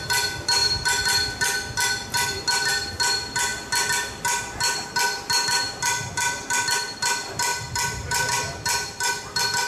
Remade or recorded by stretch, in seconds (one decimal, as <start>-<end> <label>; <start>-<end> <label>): 0.0-9.7 recorded